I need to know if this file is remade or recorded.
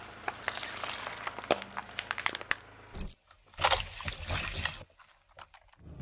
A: recorded